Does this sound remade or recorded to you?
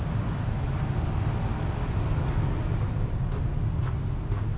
recorded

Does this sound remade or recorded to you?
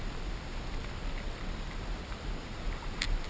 recorded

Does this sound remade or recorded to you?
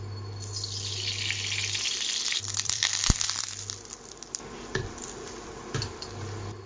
remade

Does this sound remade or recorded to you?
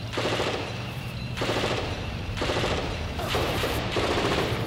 remade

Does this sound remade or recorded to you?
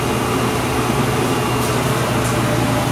recorded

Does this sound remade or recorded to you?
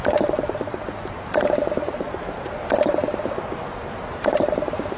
remade